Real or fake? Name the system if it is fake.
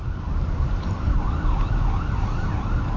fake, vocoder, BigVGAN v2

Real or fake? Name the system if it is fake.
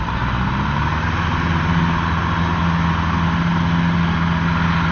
real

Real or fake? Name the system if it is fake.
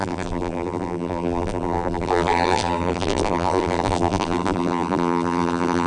fake, vocoder, BigVGAN v2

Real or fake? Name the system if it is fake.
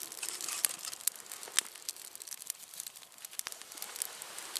real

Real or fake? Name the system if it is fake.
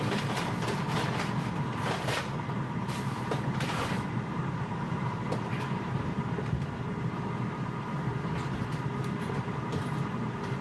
fake, vocoder, BigVGAN v2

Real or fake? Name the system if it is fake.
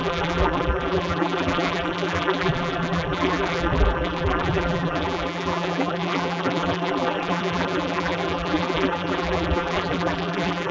fake, vocoder, BigVGAN v2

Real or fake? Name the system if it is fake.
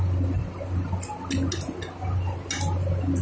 real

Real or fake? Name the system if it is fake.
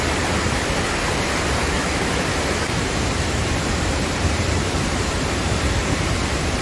fake, vocoder, BigVGAN v2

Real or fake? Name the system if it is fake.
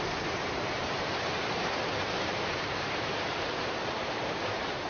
fake, vocoder, BigVGAN v2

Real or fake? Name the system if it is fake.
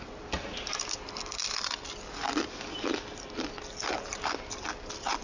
real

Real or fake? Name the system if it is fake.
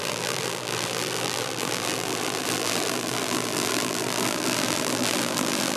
fake, vocoder, BigVGAN v2